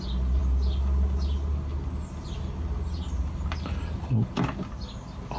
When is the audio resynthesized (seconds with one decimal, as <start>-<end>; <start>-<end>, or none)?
none